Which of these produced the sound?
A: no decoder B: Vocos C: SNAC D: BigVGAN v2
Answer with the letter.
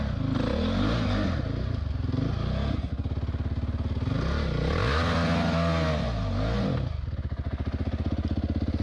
A